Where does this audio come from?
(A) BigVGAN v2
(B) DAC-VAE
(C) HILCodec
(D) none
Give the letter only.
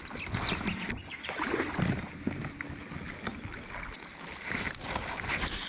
D